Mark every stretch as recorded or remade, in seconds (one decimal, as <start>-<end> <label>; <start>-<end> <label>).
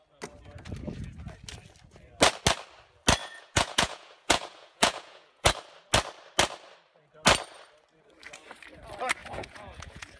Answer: 0.0-3.2 recorded; 3.2-5.5 remade; 5.5-9.2 recorded; 9.2-10.2 remade